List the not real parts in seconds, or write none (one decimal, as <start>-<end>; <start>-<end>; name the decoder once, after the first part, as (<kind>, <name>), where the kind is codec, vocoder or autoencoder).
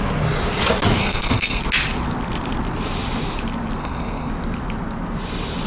1.0-1.6 (codec, SNAC); 3.8-4.3